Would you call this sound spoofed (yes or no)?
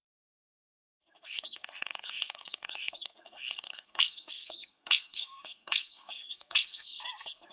yes